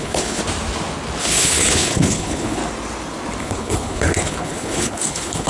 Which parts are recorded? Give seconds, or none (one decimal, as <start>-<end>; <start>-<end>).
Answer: 0.4-1.2; 2.6-3.4